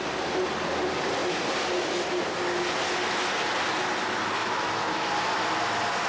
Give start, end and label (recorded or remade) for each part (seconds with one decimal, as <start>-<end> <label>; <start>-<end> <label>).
0.0-4.4 recorded; 4.4-5.1 remade; 5.1-6.1 recorded